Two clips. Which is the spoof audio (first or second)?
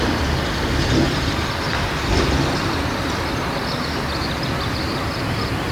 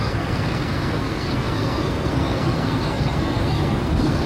second